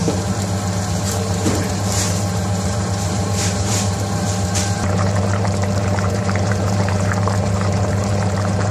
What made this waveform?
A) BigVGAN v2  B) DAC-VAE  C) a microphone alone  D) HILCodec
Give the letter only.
A